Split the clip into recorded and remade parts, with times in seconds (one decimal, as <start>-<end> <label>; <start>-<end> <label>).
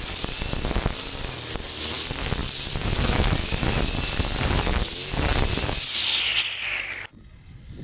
0.0-7.8 recorded